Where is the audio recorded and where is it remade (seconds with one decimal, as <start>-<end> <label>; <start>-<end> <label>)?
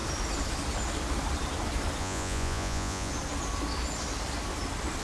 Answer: 0.0-2.0 recorded; 2.0-3.1 remade; 3.1-5.0 recorded